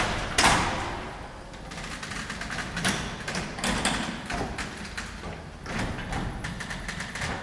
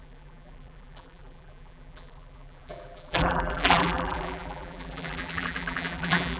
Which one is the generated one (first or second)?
second